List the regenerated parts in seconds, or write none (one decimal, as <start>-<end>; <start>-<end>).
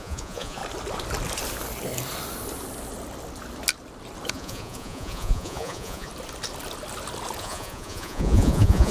0.0-0.6; 4.3-6.1; 7.4-8.9